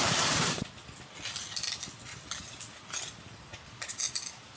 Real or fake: real